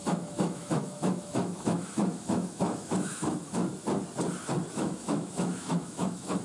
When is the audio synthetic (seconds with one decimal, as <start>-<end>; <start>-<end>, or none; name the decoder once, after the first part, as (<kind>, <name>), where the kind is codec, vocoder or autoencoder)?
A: 0.0-3.6 (autoencoder, DAC-VAE); 4.7-6.4